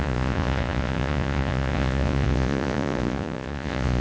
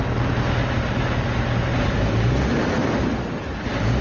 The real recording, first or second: second